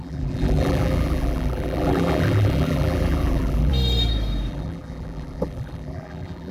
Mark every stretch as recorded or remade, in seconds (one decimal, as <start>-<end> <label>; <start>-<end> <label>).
0.0-3.7 remade; 3.7-4.5 recorded; 4.5-6.5 remade